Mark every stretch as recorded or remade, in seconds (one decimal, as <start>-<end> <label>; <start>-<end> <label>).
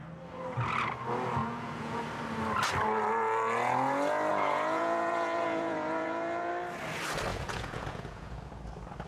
0.0-1.4 recorded; 1.4-2.0 remade; 2.0-4.3 recorded; 4.3-6.5 remade; 6.5-7.3 recorded; 7.3-8.5 remade; 8.5-9.1 recorded